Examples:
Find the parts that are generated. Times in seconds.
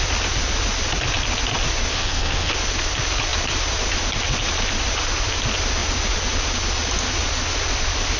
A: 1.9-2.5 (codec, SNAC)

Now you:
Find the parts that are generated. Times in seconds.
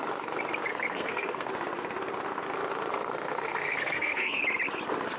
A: 0.7-1.5 (codec, SNAC); 2.9-4.4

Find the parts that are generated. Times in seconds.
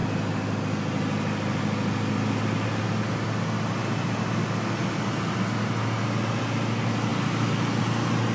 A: none